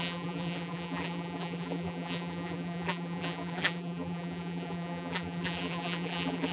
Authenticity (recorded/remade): remade